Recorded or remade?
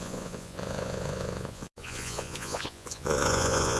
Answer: remade